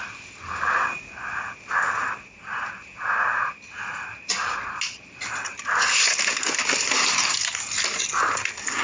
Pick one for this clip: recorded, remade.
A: recorded